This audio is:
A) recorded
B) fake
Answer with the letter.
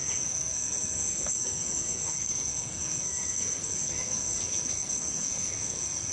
B